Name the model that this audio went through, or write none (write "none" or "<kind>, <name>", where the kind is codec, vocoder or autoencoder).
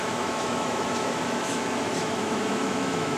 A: autoencoder, DAC-VAE